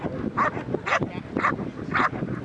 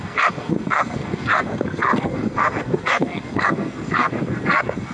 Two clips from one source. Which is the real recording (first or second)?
first